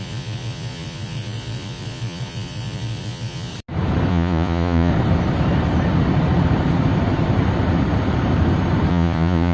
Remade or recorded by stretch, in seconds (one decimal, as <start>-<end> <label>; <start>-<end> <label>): 0.0-3.5 remade; 3.5-4.1 recorded; 4.1-4.9 remade; 4.9-8.9 recorded; 8.9-9.5 remade